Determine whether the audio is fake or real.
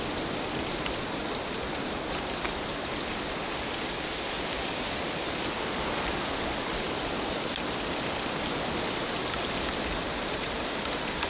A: real